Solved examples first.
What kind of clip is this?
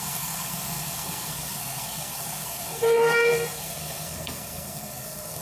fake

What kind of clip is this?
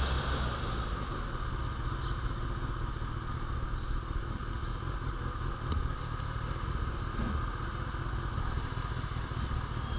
real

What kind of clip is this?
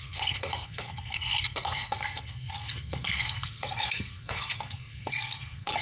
fake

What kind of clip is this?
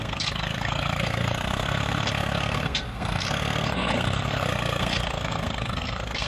fake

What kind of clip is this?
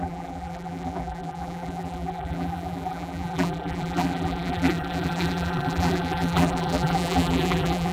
fake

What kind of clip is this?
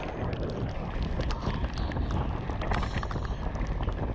real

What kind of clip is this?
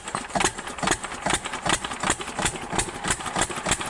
real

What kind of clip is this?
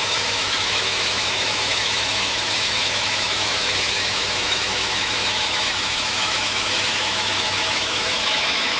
fake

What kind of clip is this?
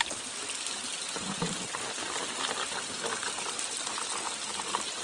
real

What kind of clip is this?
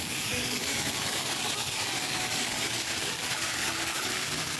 fake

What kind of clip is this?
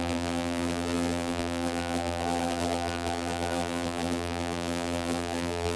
fake